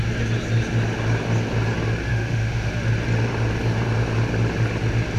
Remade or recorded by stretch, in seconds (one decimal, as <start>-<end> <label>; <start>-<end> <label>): 0.0-2.1 recorded; 2.1-2.7 remade; 2.7-5.2 recorded